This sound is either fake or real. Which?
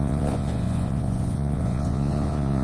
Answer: fake